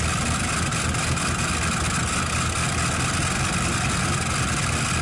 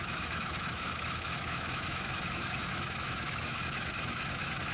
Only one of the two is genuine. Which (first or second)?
first